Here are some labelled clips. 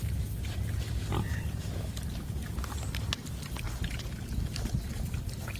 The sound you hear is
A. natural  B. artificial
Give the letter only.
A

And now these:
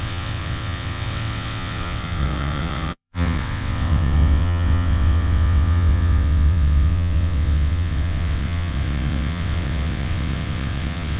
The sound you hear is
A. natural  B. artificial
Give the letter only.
B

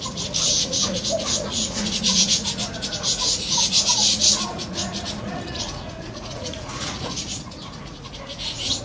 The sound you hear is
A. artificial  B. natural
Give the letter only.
A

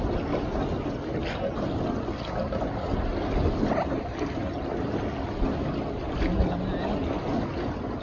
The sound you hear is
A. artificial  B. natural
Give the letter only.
B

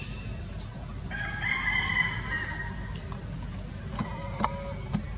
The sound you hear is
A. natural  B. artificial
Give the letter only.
A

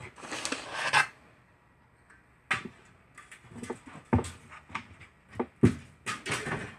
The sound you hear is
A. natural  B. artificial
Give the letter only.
A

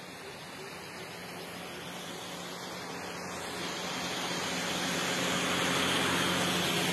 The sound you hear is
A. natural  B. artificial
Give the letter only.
A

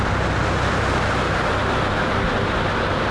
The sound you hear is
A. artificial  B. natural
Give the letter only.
B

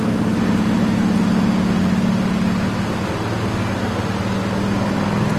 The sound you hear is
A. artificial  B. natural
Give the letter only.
B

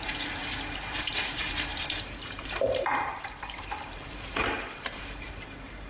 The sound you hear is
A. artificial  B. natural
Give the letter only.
A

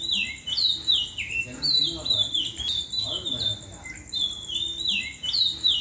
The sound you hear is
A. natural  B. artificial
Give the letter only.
A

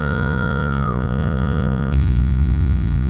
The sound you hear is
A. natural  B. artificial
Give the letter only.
B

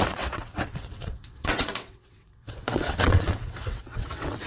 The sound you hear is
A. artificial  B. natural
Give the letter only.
A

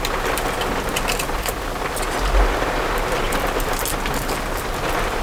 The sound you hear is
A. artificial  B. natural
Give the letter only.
B